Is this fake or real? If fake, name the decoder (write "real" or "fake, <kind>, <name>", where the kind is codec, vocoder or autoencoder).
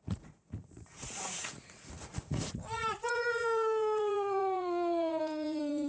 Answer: fake, vocoder, Vocos